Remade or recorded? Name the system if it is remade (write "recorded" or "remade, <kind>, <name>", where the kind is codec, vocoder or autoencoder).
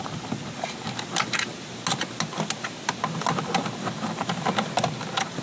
recorded